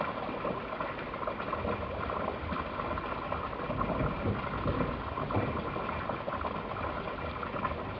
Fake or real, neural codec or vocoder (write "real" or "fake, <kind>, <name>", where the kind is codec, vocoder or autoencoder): real